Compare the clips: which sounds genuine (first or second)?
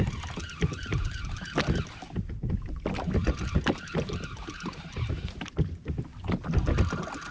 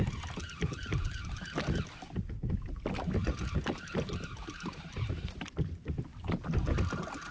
first